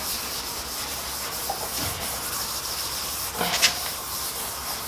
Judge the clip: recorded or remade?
recorded